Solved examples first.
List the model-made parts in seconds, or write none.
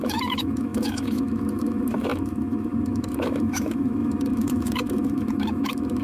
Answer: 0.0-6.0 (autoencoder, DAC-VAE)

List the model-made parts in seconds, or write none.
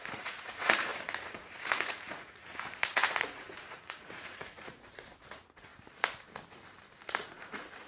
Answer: 0.0-5.7 (vocoder, Vocos); 7.2-7.9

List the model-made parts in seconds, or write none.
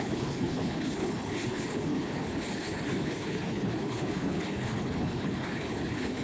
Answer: 0.0-6.2 (codec, HILCodec)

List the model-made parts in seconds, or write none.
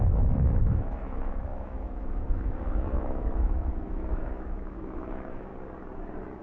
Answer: 0.0-5.5 (autoencoder, DAC-VAE)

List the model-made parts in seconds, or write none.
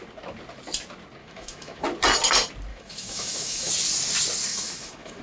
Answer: 1.2-1.8 (autoencoder, DAC-VAE); 2.7-3.7; 4.5-5.2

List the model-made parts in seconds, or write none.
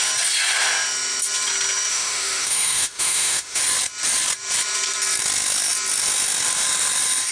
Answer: 1.9-3.6 (autoencoder, DAC-VAE)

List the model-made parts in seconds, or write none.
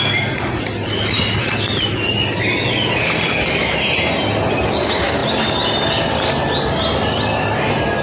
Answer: none